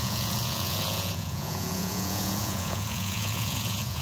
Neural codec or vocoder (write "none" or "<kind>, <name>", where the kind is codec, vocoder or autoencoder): vocoder, Vocos